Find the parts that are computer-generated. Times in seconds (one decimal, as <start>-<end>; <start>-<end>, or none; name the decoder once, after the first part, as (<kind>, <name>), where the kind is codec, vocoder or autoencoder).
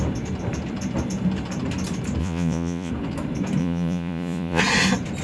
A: 2.2-2.9 (vocoder, Vocos); 3.6-4.6